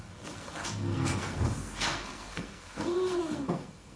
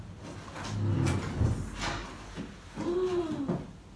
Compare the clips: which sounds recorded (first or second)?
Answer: second